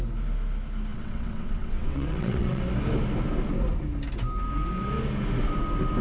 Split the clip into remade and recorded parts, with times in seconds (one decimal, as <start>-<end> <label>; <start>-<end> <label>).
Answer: 0.0-0.9 recorded; 0.9-2.6 remade; 2.6-6.0 recorded